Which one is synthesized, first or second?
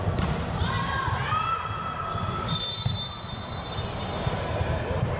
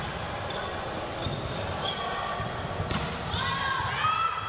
first